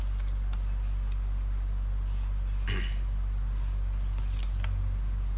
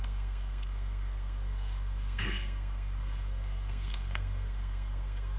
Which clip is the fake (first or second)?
second